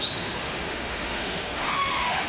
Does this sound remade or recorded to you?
remade